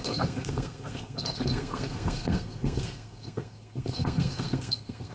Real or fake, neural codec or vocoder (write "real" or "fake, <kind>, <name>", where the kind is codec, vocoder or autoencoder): fake, codec, SNAC